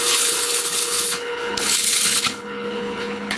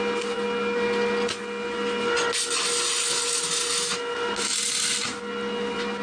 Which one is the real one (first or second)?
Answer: second